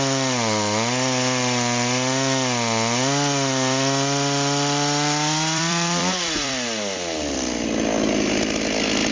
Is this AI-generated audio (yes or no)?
yes